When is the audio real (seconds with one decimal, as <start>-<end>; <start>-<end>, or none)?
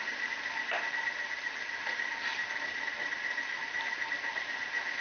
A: 0.0-5.0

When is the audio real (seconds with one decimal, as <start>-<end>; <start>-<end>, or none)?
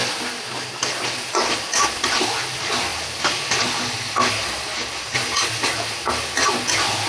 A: 0.0-7.1